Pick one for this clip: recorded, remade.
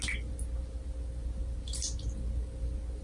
recorded